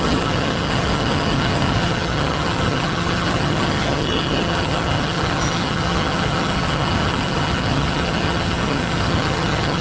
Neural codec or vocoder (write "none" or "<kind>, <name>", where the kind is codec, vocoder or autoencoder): vocoder, HiFi-GAN